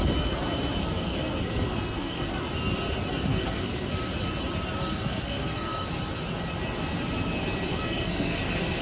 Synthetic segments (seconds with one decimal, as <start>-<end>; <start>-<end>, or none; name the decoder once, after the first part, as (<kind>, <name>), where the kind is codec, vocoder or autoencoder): 0.8-2.3 (codec, SNAC); 3.3-3.9; 4.8-5.9; 7.7-8.8